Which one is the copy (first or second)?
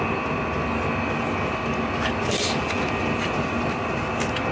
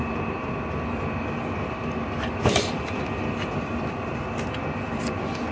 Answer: second